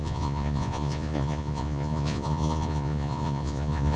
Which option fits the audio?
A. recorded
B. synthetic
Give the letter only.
B